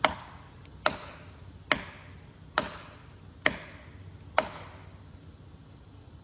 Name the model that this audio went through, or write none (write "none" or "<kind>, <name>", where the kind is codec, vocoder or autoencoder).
none